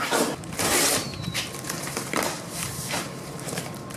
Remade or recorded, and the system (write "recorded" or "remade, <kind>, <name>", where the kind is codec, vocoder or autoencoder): remade, vocoder, BigVGAN v2